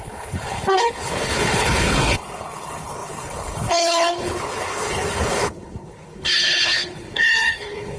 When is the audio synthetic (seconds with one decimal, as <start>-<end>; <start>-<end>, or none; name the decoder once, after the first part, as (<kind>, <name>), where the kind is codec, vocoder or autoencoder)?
0.0-8.0 (codec, HILCodec)